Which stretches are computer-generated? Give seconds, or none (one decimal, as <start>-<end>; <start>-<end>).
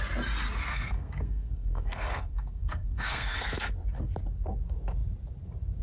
0.7-3.7